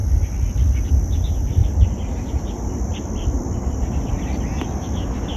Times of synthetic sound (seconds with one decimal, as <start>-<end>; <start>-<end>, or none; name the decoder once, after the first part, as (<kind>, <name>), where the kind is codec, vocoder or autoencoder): none